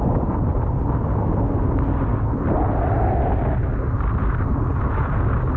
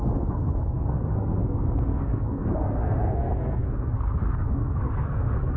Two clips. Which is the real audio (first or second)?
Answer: first